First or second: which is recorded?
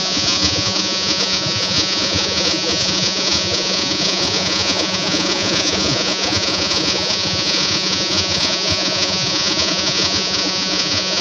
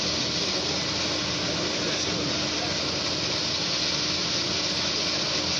second